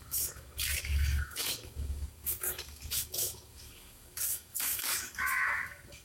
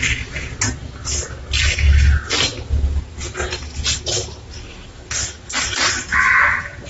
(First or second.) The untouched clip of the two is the second